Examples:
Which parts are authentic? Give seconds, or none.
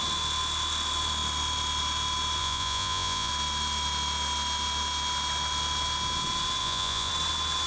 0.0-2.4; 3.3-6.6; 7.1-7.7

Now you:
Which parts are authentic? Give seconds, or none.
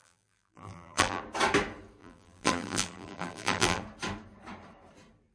1.2-2.0; 3.8-5.3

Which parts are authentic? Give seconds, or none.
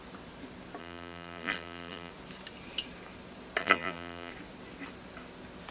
0.0-0.8; 2.1-3.6; 4.3-5.7